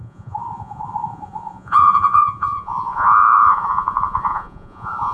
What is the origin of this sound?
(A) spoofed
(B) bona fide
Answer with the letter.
A